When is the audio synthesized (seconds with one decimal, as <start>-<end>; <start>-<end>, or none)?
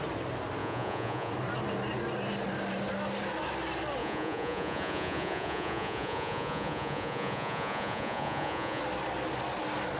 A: 0.6-1.3; 4.0-8.8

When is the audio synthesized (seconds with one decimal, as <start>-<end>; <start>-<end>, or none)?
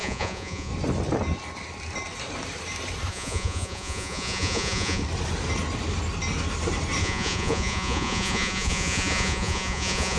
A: 0.0-0.7; 3.1-5.0; 7.0-10.2